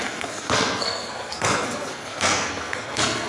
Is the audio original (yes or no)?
no